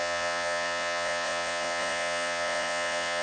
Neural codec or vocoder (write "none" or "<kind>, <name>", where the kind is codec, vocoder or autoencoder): vocoder, Vocos